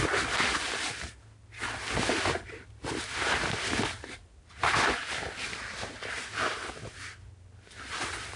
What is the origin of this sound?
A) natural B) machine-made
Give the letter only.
A